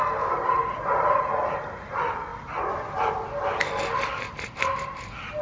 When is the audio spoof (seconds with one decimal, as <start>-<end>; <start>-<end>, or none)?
none